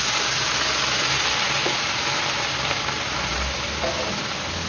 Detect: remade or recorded recorded